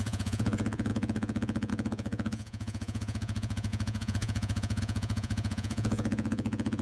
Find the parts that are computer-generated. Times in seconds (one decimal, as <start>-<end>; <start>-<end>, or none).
0.0-6.8